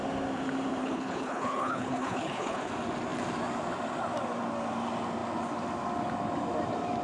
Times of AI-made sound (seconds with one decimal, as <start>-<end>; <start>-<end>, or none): 0.8-2.7